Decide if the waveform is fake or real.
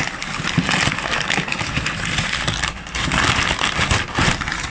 real